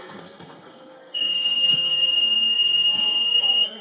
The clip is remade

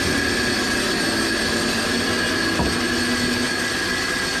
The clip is recorded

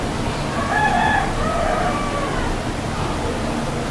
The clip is recorded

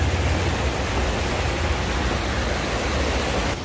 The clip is recorded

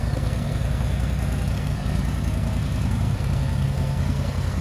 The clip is remade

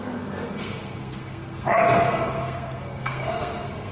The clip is remade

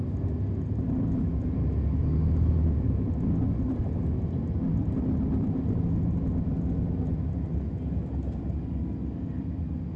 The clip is recorded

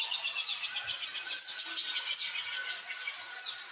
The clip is recorded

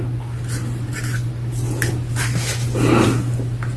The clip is recorded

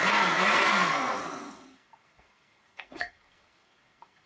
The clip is remade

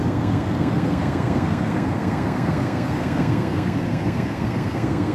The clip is remade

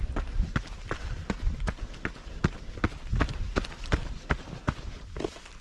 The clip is recorded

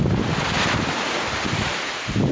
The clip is recorded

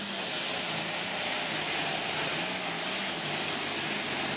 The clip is recorded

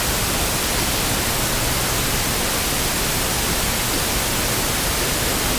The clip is recorded